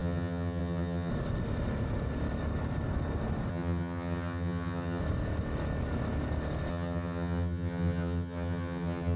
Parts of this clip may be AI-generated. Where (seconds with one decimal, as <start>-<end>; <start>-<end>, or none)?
0.0-1.1; 3.5-5.0; 6.7-9.2